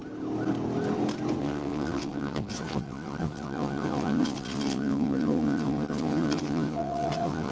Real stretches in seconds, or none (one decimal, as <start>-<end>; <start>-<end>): 0.0-1.4